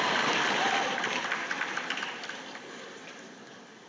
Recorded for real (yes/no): yes